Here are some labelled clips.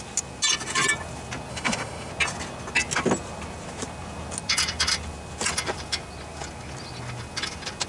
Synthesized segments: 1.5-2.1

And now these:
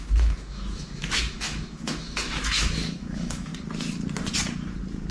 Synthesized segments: 0.0-3.5

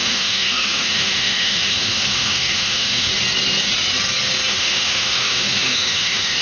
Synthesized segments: 0.0-3.1; 4.5-6.4

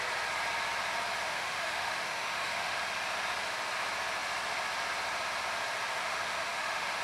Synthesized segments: 1.3-2.8; 6.0-7.0

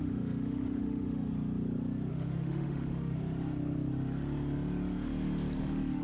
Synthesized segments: 0.0-1.3; 2.1-3.2; 5.6-6.0

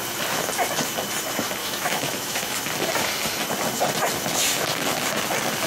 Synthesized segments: 1.6-2.6